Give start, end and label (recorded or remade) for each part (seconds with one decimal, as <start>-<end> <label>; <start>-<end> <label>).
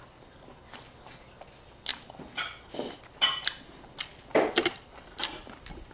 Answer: 0.0-5.9 recorded